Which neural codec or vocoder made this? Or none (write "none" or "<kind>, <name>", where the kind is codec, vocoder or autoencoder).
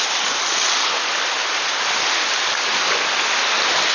none